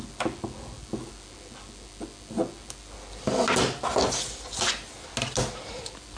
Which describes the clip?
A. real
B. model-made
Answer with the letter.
A